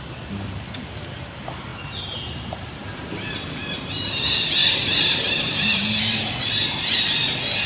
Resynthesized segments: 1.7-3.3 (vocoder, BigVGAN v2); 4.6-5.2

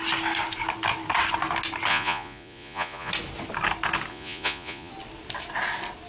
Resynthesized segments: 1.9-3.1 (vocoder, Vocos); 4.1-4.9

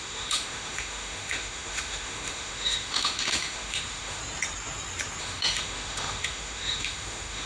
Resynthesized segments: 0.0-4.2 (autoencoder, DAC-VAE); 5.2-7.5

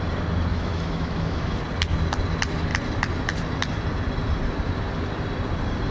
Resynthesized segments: 0.5-1.6 (autoencoder, DAC-VAE)

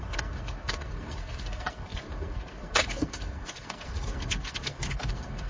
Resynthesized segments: 0.0-5.5 (codec, SNAC)

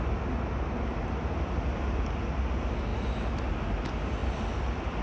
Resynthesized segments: 2.9-3.5 (vocoder, BigVGAN v2); 4.2-5.0